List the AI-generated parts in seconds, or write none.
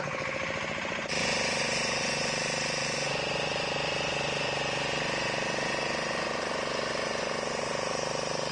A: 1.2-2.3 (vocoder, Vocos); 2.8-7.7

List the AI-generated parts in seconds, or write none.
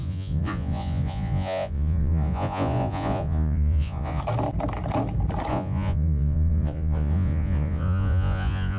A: 0.0-4.2 (vocoder, Vocos); 5.5-8.8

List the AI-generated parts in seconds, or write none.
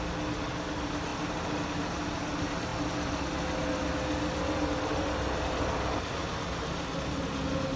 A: none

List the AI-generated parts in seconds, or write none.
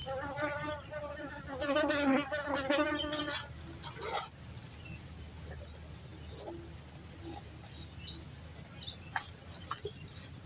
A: none